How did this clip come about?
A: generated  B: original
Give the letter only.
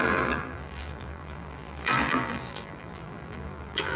A